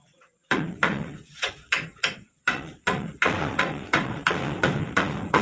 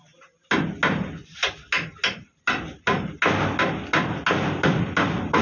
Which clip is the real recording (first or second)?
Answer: second